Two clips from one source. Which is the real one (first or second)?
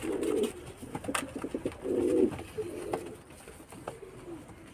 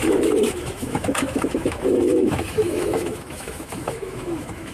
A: first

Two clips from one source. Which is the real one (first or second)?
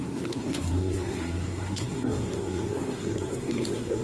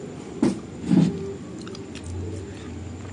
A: second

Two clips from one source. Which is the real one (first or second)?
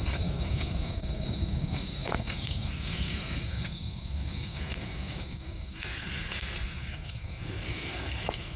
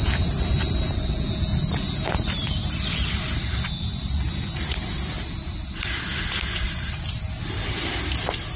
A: second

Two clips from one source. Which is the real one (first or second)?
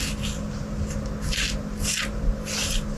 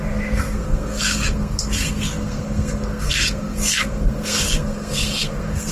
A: first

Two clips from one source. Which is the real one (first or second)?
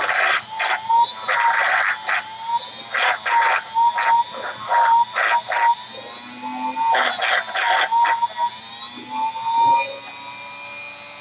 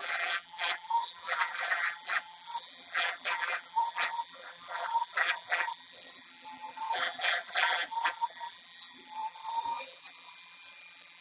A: first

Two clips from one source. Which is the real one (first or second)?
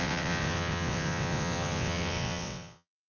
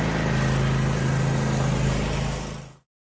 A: second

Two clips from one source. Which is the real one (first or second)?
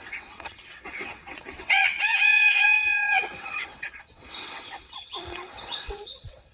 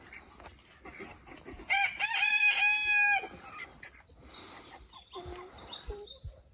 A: second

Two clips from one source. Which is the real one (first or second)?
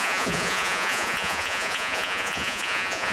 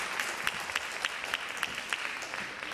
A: second